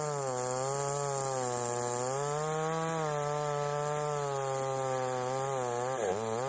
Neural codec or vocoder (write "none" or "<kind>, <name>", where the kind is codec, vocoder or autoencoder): none